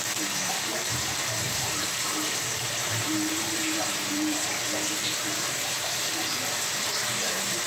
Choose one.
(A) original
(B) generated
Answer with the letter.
B